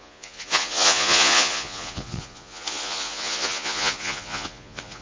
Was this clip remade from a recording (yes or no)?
yes